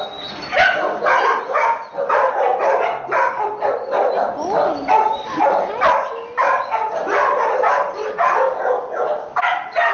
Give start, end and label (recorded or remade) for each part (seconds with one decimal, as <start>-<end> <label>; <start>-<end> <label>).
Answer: 0.0-9.9 recorded